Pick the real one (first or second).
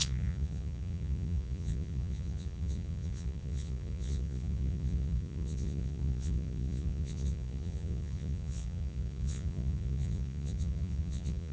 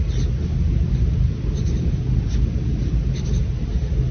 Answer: second